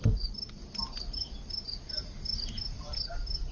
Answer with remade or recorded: recorded